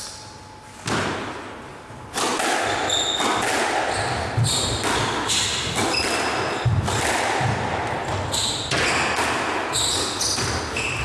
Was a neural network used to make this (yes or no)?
no